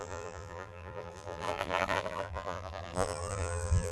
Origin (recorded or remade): remade